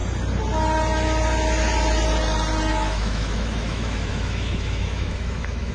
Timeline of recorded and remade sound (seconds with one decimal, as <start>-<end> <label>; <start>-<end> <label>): 0.0-2.7 recorded; 2.7-5.7 remade